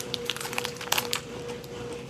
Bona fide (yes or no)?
no